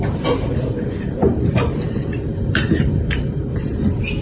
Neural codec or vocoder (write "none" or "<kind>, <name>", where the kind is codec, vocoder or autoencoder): vocoder, BigVGAN v2